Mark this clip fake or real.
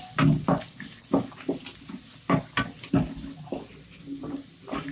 real